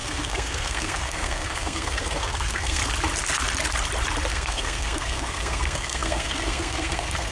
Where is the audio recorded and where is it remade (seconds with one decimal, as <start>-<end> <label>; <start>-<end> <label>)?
0.0-2.8 remade; 2.8-4.3 recorded; 4.3-7.3 remade